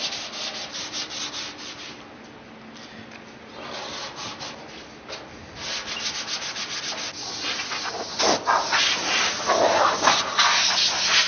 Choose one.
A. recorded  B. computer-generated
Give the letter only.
A